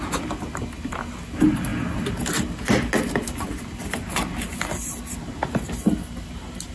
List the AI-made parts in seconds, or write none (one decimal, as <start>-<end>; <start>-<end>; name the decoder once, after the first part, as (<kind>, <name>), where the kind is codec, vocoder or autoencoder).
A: none